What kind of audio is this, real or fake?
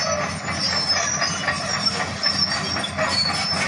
real